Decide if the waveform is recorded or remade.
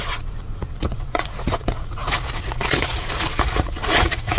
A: remade